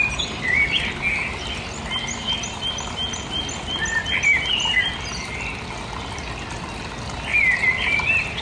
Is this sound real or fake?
real